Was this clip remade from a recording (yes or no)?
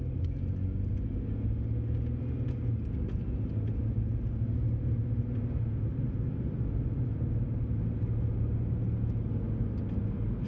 no